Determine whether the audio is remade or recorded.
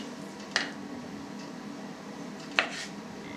recorded